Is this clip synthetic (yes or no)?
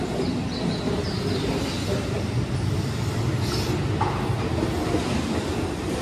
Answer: no